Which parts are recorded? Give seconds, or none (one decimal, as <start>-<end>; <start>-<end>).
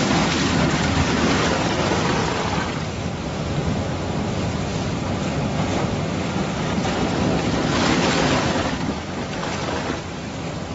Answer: 0.0-2.2; 3.4-4.7; 5.8-9.4; 10.0-10.7